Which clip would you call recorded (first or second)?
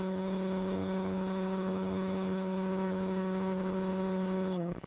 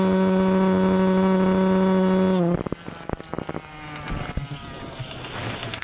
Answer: second